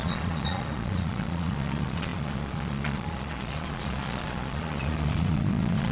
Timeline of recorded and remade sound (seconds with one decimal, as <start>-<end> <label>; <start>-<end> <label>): 0.0-5.9 remade